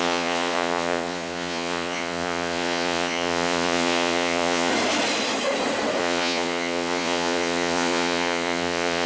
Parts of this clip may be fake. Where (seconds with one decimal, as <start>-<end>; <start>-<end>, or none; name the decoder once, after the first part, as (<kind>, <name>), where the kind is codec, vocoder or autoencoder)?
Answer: 0.0-4.7 (vocoder, Vocos); 6.0-9.1